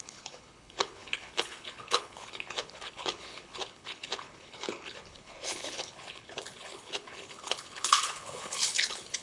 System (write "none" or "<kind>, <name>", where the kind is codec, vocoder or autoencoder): codec, HILCodec